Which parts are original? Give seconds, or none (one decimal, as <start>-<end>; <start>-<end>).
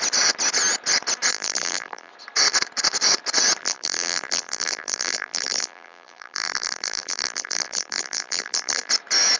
0.0-1.3; 2.1-3.6; 8.9-9.4